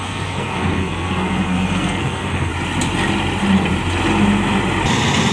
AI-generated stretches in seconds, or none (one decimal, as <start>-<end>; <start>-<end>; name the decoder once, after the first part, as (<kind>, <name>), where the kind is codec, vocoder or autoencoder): 0.0-2.5 (codec, SNAC)